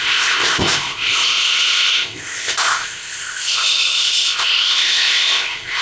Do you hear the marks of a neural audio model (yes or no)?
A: yes